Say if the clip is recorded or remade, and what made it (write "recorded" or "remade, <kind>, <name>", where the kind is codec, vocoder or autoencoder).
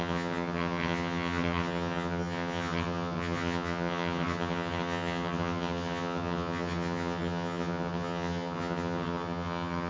remade, vocoder, HiFi-GAN